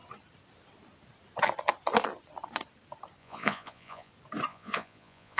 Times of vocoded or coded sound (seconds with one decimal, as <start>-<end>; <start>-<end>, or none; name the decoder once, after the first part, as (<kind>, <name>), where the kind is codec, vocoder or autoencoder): 3.2-4.1 (vocoder, Vocos); 4.5-5.4